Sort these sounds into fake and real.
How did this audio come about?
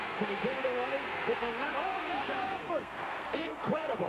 fake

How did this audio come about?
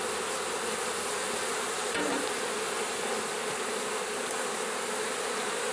real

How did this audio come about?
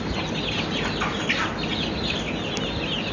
real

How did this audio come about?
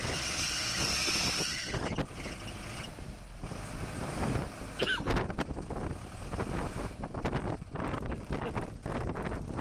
real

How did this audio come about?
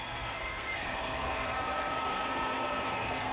fake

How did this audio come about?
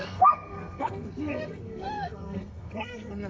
fake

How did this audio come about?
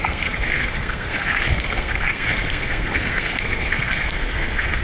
fake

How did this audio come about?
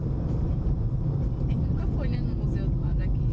real